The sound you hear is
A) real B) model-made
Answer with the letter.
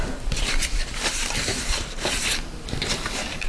B